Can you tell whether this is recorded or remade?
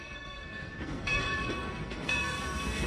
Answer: remade